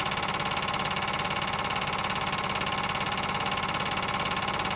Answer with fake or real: real